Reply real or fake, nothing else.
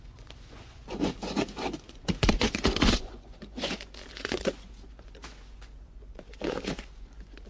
fake